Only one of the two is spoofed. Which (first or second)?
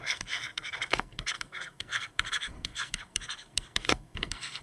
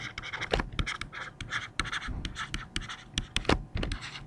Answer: first